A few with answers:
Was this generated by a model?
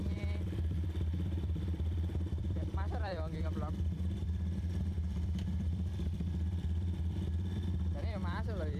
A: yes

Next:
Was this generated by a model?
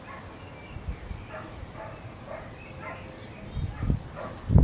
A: no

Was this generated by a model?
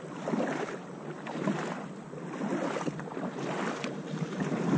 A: no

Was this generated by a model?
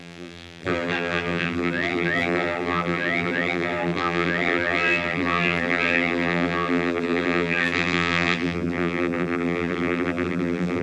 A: yes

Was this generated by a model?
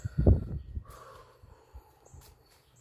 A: yes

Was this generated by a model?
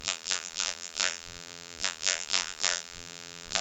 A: yes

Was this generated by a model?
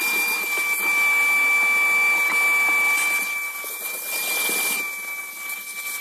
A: no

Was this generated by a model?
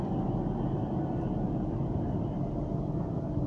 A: no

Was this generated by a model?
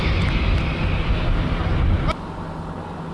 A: no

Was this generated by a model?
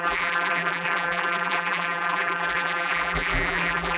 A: yes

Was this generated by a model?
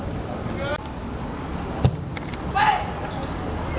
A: no